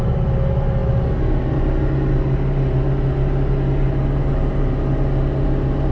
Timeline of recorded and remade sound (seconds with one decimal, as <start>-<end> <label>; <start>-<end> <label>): 0.0-5.9 recorded